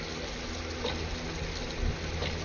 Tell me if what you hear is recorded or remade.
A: recorded